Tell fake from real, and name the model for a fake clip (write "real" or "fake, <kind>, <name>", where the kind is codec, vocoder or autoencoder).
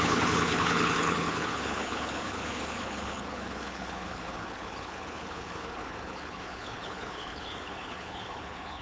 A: fake, codec, HILCodec